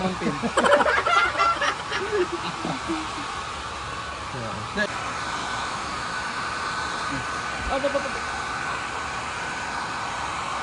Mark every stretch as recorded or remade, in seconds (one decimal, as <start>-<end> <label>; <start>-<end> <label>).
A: 0.0-5.4 recorded; 5.4-6.4 remade; 6.4-10.6 recorded